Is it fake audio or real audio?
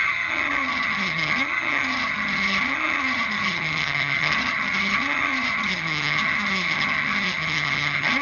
fake